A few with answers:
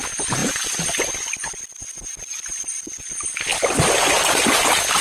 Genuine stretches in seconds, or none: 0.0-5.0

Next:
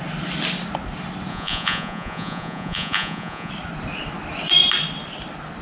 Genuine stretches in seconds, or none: 0.0-1.3; 3.5-5.6

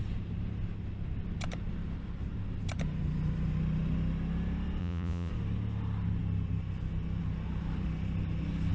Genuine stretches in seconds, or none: 0.0-4.8; 5.3-8.7

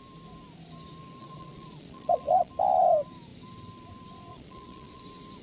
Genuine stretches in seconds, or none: 0.0-1.2; 2.5-4.3; 5.0-5.4

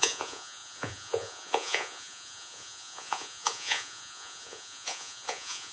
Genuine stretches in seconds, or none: none

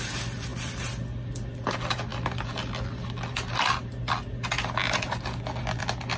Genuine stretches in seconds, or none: 0.0-6.2

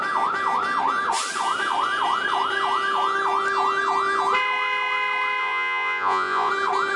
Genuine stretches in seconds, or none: 0.0-5.4; 6.5-7.0